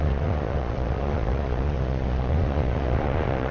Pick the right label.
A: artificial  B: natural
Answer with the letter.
A